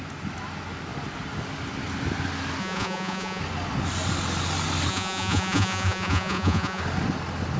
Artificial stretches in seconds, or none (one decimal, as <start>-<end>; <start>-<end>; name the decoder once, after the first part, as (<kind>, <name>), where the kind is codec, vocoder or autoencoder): 2.6-3.4 (vocoder, Vocos); 4.9-6.8